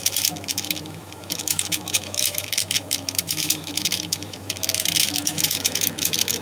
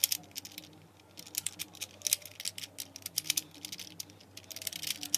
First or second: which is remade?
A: first